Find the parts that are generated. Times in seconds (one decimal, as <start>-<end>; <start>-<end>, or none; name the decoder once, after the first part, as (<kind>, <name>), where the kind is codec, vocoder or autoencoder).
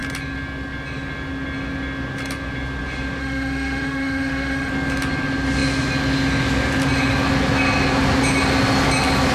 3.2-4.7 (autoencoder, DAC-VAE)